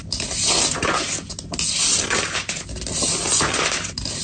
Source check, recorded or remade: recorded